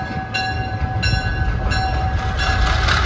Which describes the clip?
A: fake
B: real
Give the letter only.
B